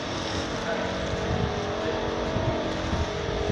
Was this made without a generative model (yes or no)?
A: yes